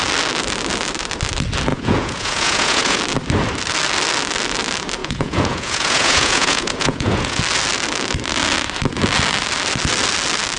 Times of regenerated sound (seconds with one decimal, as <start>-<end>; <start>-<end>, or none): 1.7-3.0; 5.0-7.4